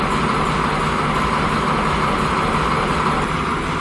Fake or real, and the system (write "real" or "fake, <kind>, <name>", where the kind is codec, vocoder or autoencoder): real